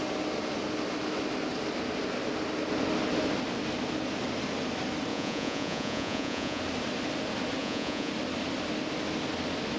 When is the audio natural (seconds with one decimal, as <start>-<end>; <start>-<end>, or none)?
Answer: 0.0-5.1; 6.6-7.6; 8.1-9.8